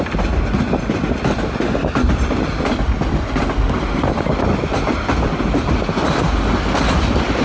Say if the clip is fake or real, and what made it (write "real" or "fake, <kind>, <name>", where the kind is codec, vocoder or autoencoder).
real